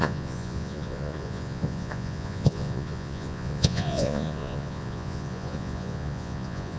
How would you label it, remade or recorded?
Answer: remade